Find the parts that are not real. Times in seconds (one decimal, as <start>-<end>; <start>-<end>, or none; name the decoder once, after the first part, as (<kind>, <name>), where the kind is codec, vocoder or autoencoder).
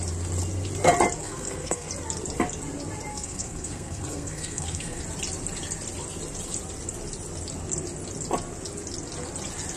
1.2-1.9 (codec, SNAC); 3.1-5.0